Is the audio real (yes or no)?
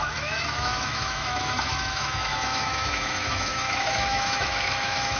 no